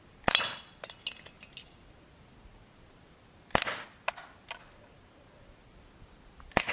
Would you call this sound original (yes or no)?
yes